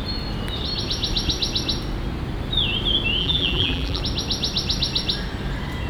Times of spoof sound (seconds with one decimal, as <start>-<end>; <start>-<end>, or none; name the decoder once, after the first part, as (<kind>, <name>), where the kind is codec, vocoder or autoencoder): 3.2-4.0 (vocoder, BigVGAN v2)

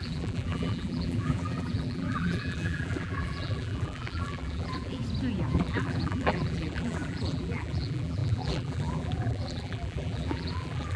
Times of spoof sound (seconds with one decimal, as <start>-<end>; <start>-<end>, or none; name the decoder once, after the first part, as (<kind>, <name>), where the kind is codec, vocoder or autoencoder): 0.0-5.0 (vocoder, BigVGAN v2); 5.5-11.0

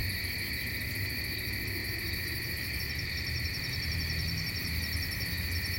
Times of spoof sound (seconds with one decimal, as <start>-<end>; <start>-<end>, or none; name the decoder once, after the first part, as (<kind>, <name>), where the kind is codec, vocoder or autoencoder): 1.8-5.3 (vocoder, BigVGAN v2)

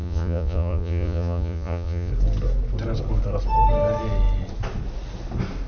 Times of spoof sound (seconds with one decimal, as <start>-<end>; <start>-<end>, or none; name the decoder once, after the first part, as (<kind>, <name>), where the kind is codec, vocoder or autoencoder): 0.0-2.1 (vocoder, Vocos)

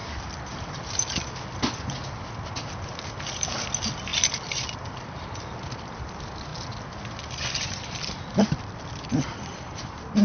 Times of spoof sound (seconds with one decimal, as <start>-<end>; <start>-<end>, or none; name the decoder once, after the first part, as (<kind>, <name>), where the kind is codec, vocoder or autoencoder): 2.8-6.5 (vocoder, BigVGAN v2); 7.3-10.2